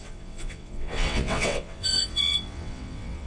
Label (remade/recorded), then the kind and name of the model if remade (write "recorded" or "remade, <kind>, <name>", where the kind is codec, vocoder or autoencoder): remade, vocoder, WaveNeXt